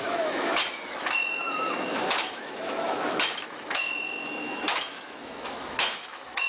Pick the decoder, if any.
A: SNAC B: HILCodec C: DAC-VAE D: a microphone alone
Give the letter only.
C